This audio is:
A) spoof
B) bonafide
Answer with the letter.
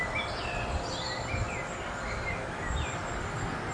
B